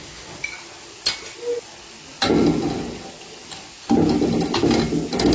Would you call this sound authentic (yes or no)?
yes